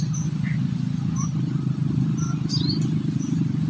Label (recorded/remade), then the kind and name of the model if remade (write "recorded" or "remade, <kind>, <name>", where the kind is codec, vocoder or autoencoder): recorded